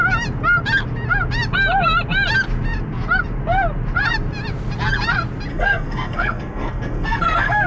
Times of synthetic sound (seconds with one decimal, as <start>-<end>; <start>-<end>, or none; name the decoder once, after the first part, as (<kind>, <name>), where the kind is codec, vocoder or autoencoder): 5.5-7.7 (codec, SNAC)